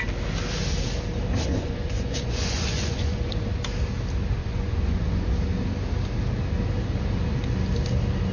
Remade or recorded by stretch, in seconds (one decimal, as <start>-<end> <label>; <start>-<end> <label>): 0.0-1.5 recorded; 1.5-3.5 remade; 3.5-4.4 recorded; 4.4-5.3 remade; 5.3-8.3 recorded